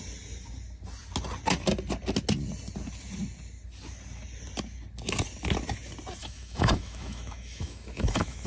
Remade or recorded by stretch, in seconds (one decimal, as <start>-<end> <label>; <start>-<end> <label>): 0.0-6.2 recorded; 6.2-8.5 remade